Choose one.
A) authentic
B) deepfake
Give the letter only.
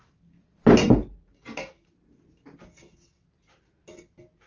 A